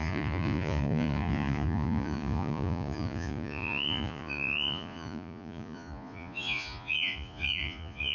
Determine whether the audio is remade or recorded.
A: remade